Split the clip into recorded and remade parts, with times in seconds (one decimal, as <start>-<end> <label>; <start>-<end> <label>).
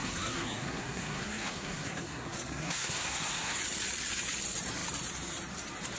0.0-3.6 remade; 3.6-6.0 recorded